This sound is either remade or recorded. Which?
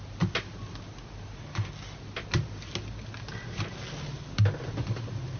recorded